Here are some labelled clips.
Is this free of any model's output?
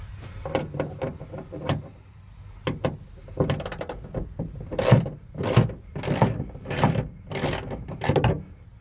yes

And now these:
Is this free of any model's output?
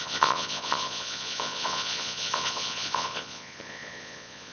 no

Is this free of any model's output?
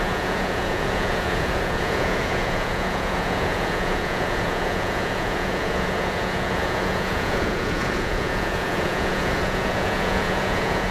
no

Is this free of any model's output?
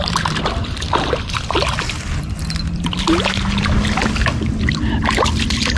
yes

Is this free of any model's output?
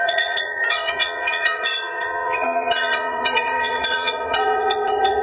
no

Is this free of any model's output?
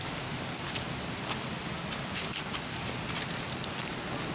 yes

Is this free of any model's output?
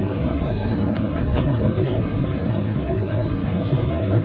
no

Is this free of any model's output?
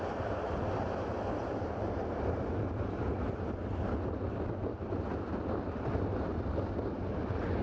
yes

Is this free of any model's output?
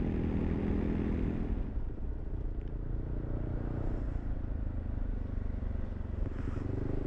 yes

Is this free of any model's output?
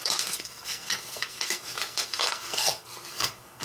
no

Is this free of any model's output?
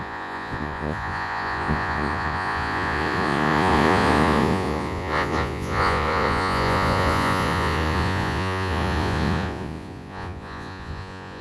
no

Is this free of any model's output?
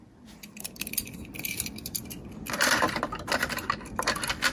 yes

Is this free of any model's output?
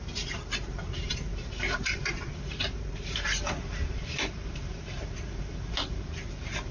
no